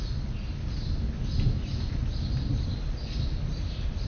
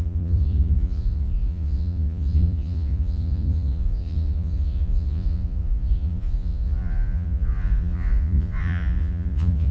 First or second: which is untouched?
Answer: first